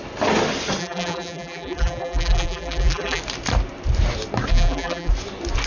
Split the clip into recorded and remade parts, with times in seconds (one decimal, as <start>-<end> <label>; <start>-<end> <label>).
0.0-0.8 recorded; 0.8-3.2 remade; 3.2-4.5 recorded; 4.5-5.1 remade; 5.1-5.7 recorded

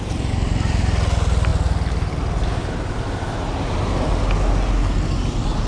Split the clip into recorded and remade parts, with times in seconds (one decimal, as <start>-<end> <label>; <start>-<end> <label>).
0.0-2.6 recorded; 2.6-3.6 remade; 3.6-5.7 recorded

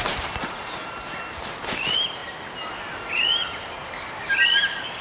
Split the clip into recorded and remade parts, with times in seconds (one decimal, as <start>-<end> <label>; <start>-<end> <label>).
0.0-0.8 remade; 0.8-1.6 recorded; 1.6-2.2 remade; 2.2-2.9 recorded; 2.9-5.0 remade

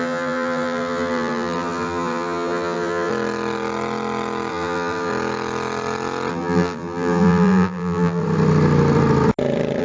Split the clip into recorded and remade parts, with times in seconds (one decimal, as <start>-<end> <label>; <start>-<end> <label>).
0.0-3.1 remade; 3.1-4.5 recorded; 4.5-5.1 remade; 5.1-6.3 recorded; 6.3-8.2 remade; 8.2-9.8 recorded

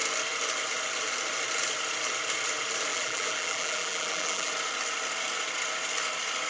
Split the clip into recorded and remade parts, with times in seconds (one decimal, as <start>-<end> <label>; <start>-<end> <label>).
0.0-2.9 recorded; 2.9-4.5 remade; 4.5-6.5 recorded

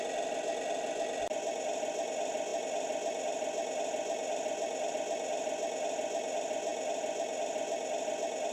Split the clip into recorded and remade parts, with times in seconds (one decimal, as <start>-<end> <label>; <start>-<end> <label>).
0.0-8.5 recorded

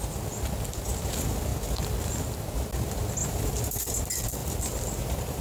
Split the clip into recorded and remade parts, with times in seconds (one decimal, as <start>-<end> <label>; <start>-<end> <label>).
0.0-3.2 recorded; 3.2-3.8 remade; 3.8-4.4 recorded; 4.4-5.4 remade

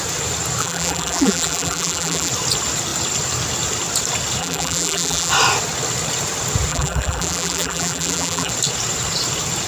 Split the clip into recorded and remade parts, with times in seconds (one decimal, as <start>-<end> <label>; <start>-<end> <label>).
0.0-0.6 recorded; 0.6-2.3 remade; 2.3-4.4 recorded; 4.4-5.3 remade; 5.3-6.7 recorded; 6.7-8.5 remade; 8.5-9.7 recorded